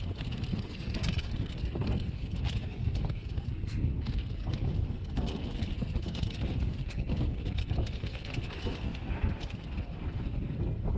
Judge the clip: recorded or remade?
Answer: remade